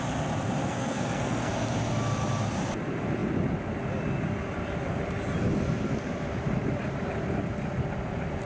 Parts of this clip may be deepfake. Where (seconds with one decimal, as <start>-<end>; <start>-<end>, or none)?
0.6-1.5